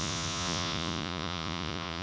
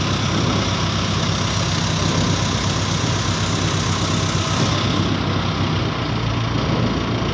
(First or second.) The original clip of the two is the second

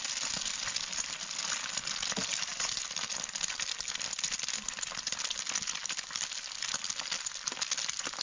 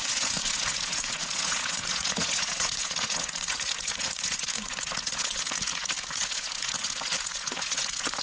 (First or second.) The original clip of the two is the first